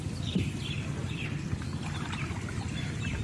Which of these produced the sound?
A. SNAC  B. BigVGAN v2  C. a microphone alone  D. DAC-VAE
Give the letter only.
B